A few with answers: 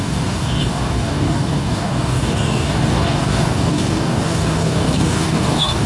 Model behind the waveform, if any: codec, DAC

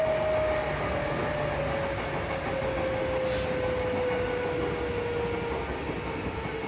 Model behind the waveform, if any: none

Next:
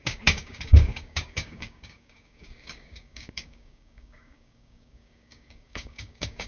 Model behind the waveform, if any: codec, DAC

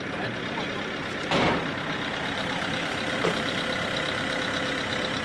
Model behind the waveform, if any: vocoder, BigVGAN v2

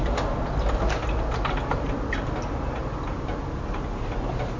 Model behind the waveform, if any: none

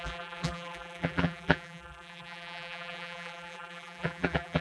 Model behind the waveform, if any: vocoder, BigVGAN v2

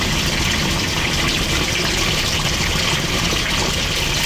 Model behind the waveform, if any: none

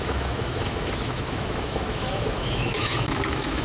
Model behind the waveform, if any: autoencoder, DAC-VAE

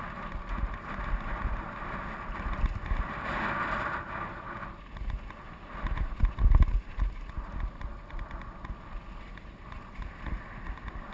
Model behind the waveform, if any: none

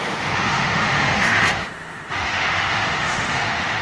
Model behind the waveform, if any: autoencoder, DAC-VAE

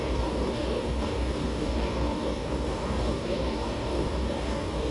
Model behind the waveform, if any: codec, DAC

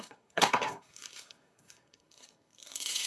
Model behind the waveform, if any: codec, SNAC